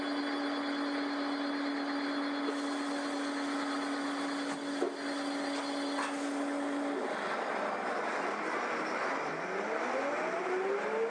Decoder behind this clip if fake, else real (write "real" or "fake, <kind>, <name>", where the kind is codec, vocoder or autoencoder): real